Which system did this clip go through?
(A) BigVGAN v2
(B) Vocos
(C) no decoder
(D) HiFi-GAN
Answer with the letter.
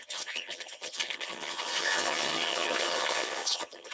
D